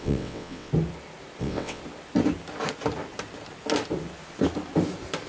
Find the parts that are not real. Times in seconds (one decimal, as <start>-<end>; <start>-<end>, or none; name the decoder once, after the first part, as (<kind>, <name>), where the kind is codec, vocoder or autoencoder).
0.0-0.7 (vocoder, WaveNeXt); 1.4-1.8